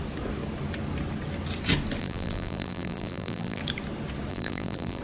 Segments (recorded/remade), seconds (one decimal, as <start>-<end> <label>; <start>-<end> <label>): 0.0-2.0 recorded; 2.0-3.6 remade; 3.6-4.3 recorded; 4.3-5.0 remade